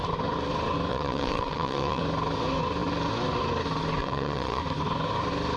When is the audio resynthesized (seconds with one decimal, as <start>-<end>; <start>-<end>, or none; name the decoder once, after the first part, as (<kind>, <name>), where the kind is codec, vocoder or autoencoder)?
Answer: 0.9-2.0 (vocoder, WaveNeXt); 4.0-4.6